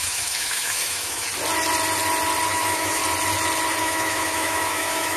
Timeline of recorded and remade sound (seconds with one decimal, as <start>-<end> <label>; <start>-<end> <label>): 0.0-1.3 remade; 1.3-2.5 recorded; 2.5-3.0 remade; 3.0-3.8 recorded; 3.8-5.2 remade